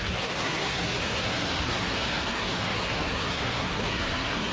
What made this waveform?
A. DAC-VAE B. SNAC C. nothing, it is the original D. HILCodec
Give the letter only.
B